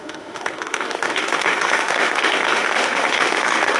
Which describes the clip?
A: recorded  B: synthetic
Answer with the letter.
B